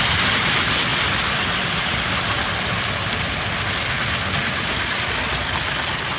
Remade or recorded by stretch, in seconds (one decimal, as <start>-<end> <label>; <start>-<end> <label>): 0.0-6.2 recorded